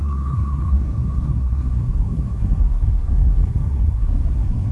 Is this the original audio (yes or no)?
no